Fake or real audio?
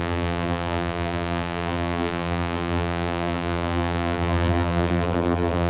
fake